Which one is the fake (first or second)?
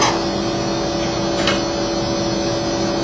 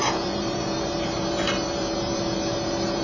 second